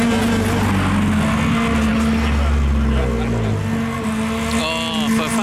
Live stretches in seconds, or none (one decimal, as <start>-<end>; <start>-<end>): 0.0-5.4